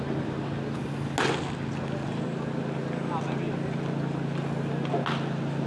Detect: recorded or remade recorded